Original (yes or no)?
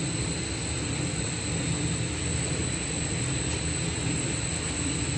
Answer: yes